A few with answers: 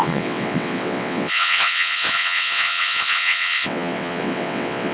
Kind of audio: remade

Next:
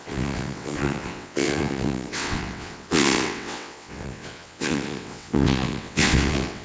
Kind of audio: remade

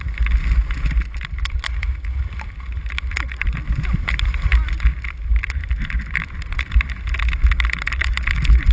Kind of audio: recorded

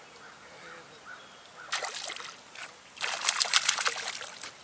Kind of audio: recorded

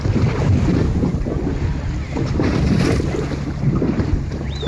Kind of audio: recorded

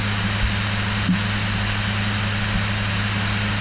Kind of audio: recorded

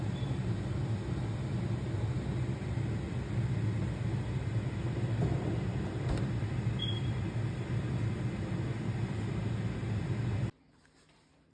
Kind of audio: recorded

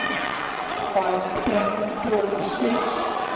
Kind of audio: remade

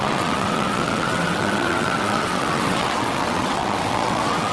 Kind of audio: remade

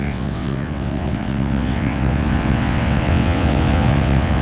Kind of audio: remade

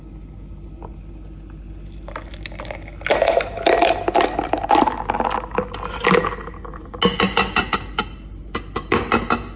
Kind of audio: recorded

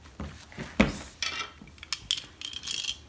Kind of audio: recorded